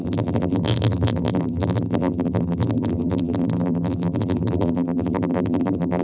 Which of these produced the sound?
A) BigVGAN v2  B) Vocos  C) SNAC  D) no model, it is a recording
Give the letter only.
A